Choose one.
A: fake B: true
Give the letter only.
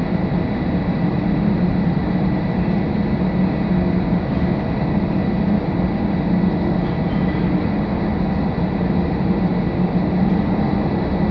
B